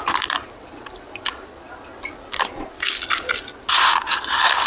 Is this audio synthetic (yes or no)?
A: no